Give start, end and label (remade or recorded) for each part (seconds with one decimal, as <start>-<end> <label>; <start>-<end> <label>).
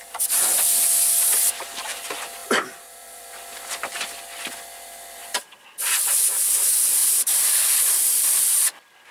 0.0-2.4 recorded; 2.4-3.2 remade; 3.2-5.2 recorded; 5.2-5.7 remade; 5.7-7.0 recorded; 7.0-8.1 remade; 8.1-9.1 recorded